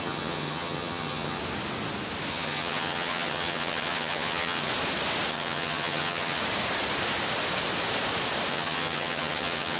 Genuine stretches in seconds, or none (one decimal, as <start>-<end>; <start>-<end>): 1.4-2.3; 4.7-5.3; 6.4-8.5